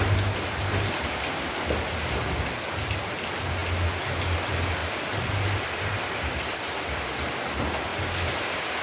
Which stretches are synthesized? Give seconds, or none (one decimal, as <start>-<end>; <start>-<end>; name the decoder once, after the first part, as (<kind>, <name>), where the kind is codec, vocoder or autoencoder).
none